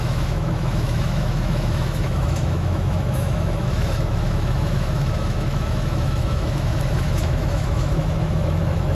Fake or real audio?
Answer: fake